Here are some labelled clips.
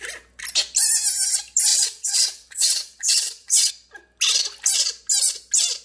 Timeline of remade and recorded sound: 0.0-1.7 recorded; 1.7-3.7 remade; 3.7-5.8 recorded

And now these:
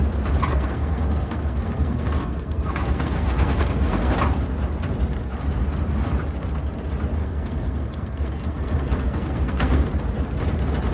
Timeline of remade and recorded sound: 0.0-0.5 recorded; 0.5-4.1 remade; 4.1-7.2 recorded; 7.2-9.9 remade; 9.9-10.9 recorded

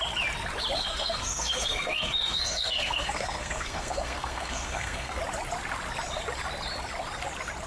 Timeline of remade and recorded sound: 0.0-0.8 recorded; 0.8-5.2 remade; 5.2-7.7 recorded